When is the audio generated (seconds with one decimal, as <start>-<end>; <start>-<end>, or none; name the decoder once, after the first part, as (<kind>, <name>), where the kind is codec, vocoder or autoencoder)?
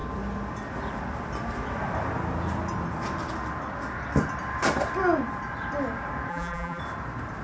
6.3-6.8 (vocoder, BigVGAN v2)